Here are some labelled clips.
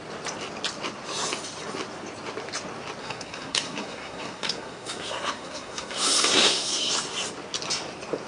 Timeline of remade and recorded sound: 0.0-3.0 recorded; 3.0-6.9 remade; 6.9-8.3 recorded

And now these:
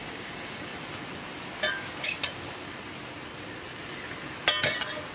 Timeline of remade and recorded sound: 0.0-0.7 remade; 0.7-1.7 recorded; 1.7-2.2 remade; 2.2-5.1 recorded

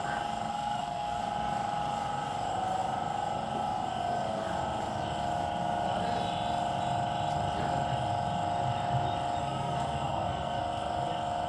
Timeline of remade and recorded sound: 0.0-0.5 recorded; 0.5-1.2 remade; 1.2-9.4 recorded; 9.4-10.6 remade; 10.6-11.5 recorded

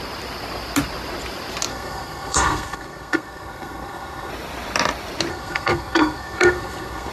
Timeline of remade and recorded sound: 0.0-1.7 recorded; 1.7-4.3 remade; 4.3-5.3 recorded; 5.3-7.1 remade